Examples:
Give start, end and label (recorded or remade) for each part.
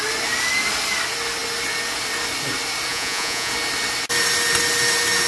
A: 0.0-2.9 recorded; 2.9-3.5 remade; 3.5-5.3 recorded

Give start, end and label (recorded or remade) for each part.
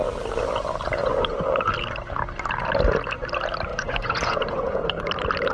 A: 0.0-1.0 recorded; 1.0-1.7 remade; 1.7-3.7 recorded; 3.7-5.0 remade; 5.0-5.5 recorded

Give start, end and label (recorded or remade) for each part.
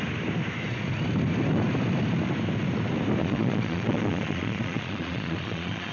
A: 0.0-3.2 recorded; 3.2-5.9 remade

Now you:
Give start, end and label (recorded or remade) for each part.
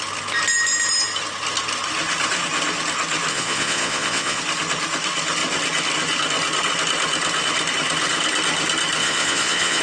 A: 0.0-3.3 recorded; 3.3-4.4 remade; 4.4-9.0 recorded; 9.0-9.8 remade